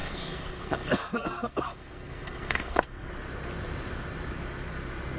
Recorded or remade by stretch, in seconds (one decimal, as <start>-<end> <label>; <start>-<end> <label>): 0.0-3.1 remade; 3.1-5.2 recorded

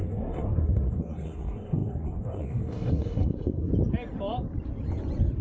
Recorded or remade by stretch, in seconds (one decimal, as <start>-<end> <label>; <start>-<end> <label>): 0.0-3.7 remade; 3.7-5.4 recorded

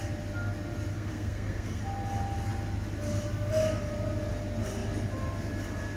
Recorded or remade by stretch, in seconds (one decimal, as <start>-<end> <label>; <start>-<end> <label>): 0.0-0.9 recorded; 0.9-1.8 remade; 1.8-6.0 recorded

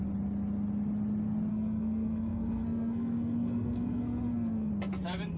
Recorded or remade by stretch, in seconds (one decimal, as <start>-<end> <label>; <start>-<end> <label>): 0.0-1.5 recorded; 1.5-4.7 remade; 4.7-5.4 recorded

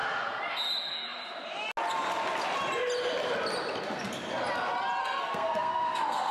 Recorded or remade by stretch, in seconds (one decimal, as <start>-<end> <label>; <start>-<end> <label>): 0.0-5.0 recorded; 5.0-6.3 remade